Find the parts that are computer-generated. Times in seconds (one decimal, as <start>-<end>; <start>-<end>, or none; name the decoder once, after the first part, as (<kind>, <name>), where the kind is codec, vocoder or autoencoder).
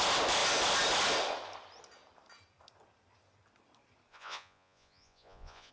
4.1-5.7 (vocoder, Vocos)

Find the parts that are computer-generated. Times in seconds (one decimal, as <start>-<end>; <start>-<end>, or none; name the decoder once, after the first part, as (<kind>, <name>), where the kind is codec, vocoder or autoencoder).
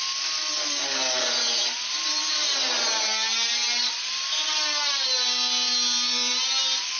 none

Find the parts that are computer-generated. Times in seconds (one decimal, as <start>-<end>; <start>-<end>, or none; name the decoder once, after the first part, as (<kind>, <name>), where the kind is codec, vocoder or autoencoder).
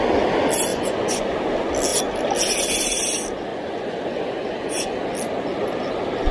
0.7-1.2 (vocoder, Vocos); 3.5-5.0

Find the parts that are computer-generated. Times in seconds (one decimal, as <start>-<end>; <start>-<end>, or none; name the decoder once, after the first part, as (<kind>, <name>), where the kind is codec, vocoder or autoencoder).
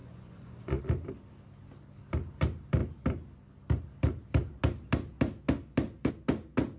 0.0-0.8 (vocoder, Vocos)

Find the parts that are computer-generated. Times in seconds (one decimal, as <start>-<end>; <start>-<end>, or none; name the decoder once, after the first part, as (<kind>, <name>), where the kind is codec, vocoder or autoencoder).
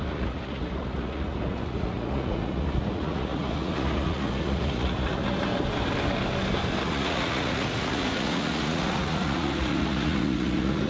0.0-5.5 (vocoder, Vocos); 6.8-10.9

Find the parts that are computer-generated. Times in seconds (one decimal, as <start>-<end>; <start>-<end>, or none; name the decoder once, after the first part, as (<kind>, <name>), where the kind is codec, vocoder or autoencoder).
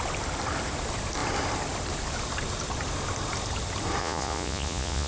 4.0-5.1 (vocoder, Vocos)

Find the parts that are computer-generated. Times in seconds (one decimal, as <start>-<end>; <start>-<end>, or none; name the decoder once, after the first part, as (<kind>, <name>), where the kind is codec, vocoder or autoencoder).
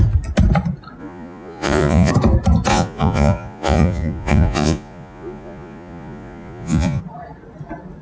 1.0-2.1 (vocoder, Vocos); 2.7-7.0